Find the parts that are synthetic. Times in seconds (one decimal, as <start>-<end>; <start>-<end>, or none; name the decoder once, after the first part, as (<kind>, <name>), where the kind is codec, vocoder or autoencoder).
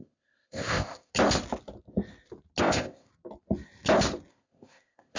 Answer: 0.0-1.1 (codec, ZipCodec); 2.6-3.1; 4.3-5.2